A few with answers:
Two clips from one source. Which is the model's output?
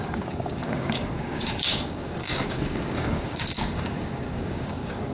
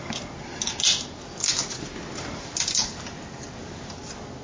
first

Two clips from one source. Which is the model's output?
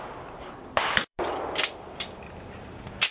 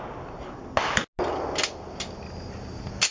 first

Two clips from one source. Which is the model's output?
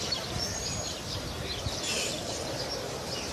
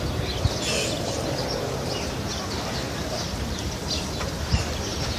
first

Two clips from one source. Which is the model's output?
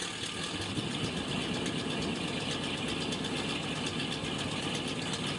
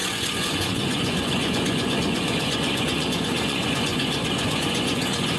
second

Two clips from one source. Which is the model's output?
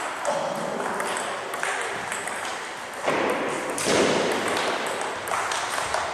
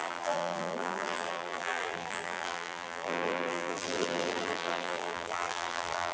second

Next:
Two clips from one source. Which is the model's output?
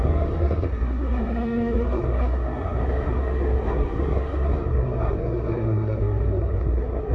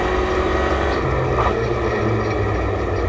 first